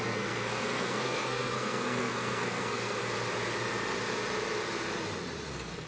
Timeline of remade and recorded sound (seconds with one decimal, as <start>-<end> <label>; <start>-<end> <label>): 0.0-3.0 remade; 3.0-5.5 recorded; 5.5-5.9 remade